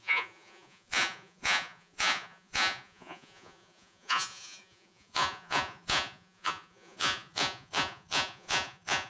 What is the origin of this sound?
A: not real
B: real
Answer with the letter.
A